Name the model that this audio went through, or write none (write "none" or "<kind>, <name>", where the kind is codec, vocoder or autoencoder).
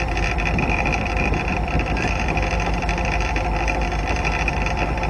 vocoder, BigVGAN v2